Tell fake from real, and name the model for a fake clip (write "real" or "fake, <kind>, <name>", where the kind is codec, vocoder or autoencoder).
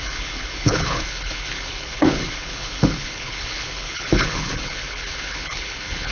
fake, codec, HILCodec